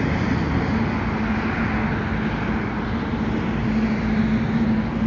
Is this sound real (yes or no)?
yes